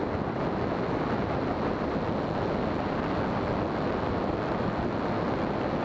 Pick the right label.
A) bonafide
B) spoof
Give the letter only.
B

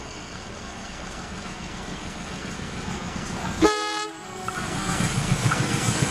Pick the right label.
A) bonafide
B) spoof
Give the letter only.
B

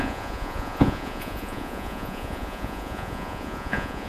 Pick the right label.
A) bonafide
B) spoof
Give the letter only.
B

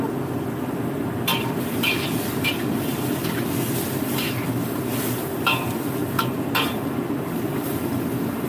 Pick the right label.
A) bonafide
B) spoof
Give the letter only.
B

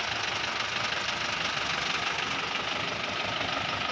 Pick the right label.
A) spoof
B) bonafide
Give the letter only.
B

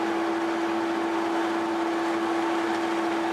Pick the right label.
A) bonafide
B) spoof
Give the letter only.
A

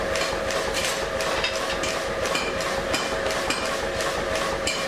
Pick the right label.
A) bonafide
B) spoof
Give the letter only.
A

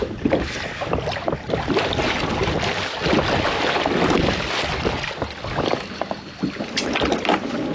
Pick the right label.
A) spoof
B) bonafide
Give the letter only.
B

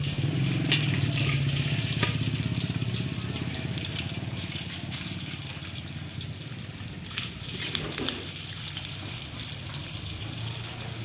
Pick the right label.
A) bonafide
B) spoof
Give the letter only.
A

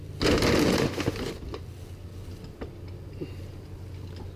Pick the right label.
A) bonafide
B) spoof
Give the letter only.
A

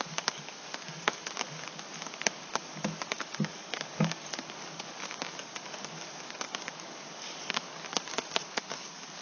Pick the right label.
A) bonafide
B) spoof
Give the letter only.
B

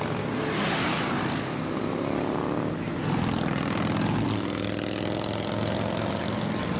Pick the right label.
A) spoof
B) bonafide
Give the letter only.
B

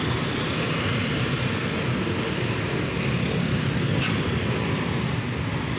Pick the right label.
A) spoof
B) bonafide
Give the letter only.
B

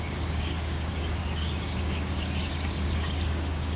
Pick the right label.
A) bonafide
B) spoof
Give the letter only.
B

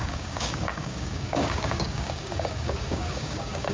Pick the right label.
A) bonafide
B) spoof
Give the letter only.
B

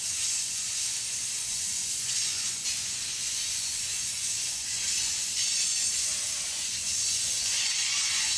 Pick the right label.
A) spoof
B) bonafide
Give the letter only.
A